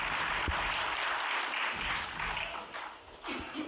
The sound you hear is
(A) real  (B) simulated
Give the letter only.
A